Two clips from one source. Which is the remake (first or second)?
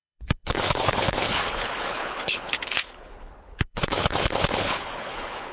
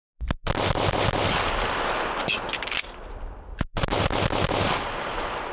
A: first